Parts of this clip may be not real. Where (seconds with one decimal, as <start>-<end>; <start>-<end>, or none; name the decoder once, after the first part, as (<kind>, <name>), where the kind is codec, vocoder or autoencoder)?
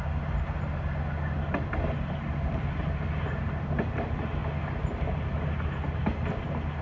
none